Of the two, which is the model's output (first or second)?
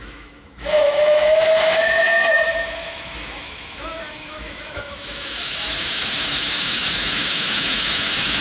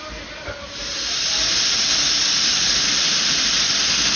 first